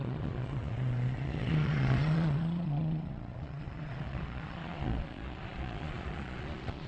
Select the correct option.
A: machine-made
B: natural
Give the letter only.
A